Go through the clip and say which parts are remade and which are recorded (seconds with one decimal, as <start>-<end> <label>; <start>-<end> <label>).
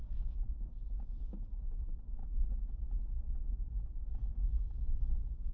0.0-5.5 recorded